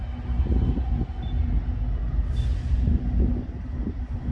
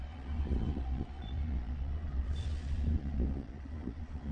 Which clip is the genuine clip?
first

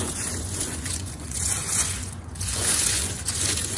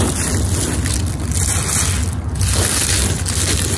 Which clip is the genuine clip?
second